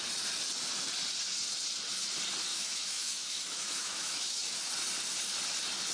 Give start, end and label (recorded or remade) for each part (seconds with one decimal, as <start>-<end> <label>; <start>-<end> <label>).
0.0-2.5 recorded; 2.5-4.7 remade; 4.7-5.9 recorded